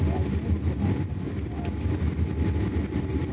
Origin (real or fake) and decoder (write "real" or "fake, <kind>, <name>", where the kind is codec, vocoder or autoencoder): real